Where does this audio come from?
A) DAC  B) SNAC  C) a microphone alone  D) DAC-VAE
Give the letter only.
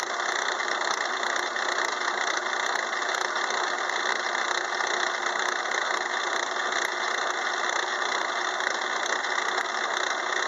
C